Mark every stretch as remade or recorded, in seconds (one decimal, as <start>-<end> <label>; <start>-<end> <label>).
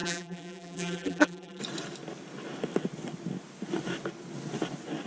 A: 0.0-1.6 remade; 1.6-5.1 recorded